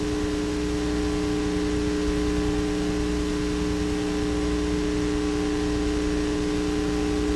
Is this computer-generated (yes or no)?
no